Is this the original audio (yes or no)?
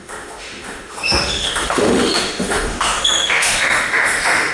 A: no